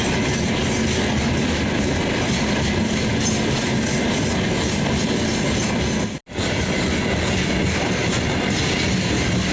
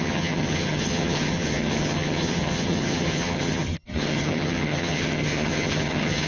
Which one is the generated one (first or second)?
second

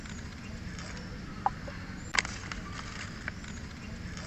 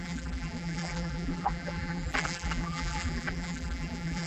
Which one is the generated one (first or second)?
second